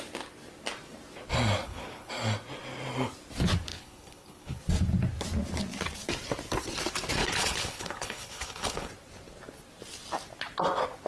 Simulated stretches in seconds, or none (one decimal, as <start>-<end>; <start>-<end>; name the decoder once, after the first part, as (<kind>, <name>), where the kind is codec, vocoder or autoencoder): 1.6-2.1 (codec, HILCodec); 3.7-4.6; 7.2-8.9